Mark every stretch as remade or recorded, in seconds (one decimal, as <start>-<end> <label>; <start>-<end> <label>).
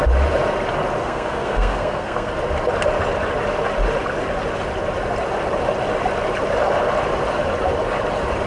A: 0.0-1.0 recorded; 1.0-2.3 remade; 2.3-8.5 recorded